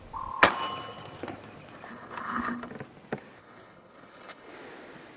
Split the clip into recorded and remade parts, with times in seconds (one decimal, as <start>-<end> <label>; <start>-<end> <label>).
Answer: 0.0-1.9 recorded; 1.9-2.7 remade; 2.7-3.4 recorded; 3.4-4.5 remade; 4.5-5.2 recorded